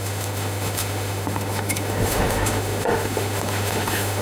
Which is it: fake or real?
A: fake